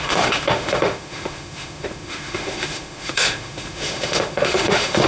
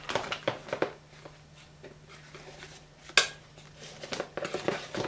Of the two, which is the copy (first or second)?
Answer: first